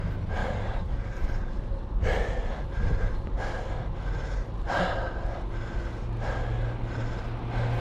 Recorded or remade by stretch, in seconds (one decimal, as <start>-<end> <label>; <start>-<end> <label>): 0.0-0.4 recorded; 0.4-1.6 remade; 1.6-7.8 recorded